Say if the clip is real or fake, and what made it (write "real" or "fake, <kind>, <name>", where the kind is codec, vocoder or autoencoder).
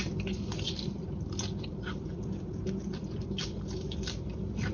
fake, vocoder, BigVGAN v2